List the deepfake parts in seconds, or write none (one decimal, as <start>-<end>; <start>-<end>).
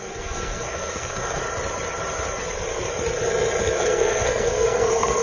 0.0-1.4; 3.6-5.2